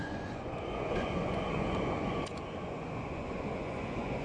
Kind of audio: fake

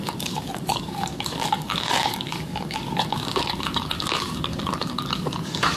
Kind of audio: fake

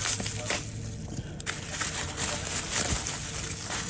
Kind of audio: real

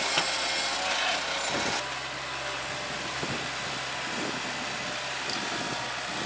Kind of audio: real